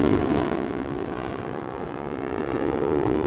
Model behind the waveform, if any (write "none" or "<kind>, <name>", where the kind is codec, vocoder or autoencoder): vocoder, WaveNeXt